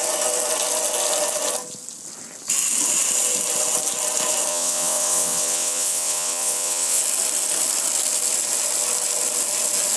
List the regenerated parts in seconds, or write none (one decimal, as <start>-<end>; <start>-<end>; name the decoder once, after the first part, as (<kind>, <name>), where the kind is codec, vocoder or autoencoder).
4.5-7.0 (vocoder, WaveNeXt)